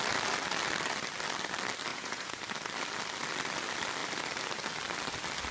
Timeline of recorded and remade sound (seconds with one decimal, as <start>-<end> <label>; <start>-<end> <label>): 0.0-1.9 recorded; 1.9-2.4 remade; 2.4-5.5 recorded